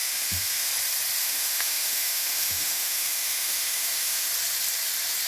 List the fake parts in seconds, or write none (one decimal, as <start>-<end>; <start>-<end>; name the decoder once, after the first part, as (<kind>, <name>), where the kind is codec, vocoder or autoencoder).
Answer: 0.0-0.7 (autoencoder, DAC-VAE); 1.2-4.3